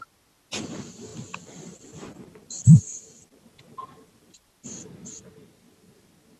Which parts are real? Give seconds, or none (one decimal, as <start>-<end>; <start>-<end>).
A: 0.0-1.1; 4.9-6.4